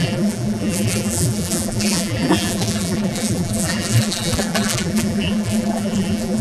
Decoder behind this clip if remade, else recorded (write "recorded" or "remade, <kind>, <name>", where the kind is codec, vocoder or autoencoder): remade, vocoder, BigVGAN v2